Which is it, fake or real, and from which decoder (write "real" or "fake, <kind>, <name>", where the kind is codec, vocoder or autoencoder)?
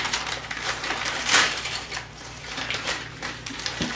fake, vocoder, BigVGAN v2